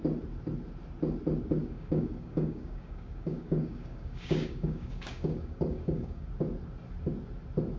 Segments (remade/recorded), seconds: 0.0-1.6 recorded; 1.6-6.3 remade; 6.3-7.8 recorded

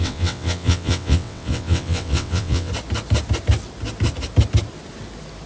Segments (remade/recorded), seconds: 0.0-2.7 remade; 2.7-5.5 recorded

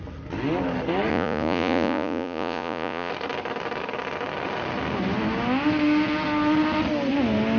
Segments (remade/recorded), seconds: 0.0-1.1 recorded; 1.1-3.1 remade; 3.1-7.6 recorded

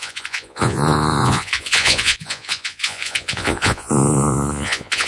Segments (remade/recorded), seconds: 0.0-5.1 remade

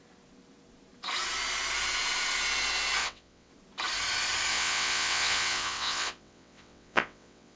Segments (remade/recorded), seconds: 0.0-3.0 recorded; 3.0-3.5 remade; 3.5-4.5 recorded; 4.5-7.6 remade

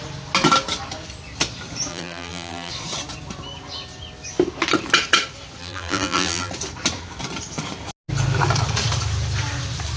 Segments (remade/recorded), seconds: 0.0-1.9 recorded; 1.9-2.7 remade; 2.7-5.6 recorded; 5.6-6.5 remade; 6.5-10.0 recorded